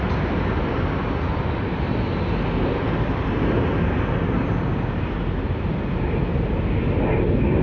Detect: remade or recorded recorded